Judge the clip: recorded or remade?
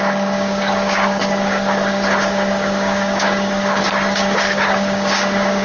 remade